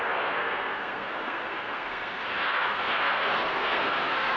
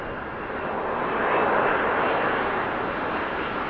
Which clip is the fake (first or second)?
first